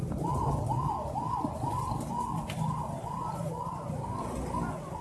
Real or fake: real